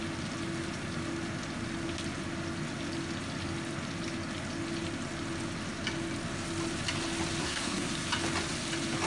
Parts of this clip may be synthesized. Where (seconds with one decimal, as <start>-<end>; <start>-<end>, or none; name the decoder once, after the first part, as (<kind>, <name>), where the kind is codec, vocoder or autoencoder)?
7.4-7.9 (codec, SNAC)